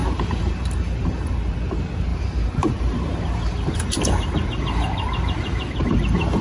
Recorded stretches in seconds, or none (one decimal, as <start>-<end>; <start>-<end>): 1.5-2.1; 5.9-6.4